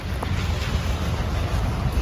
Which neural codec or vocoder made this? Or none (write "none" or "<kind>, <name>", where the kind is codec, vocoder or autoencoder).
none